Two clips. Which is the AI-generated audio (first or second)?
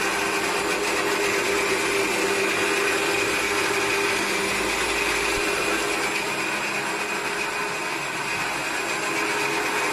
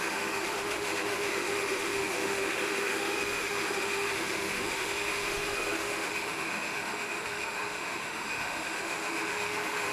second